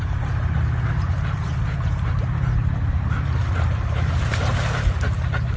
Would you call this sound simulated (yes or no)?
yes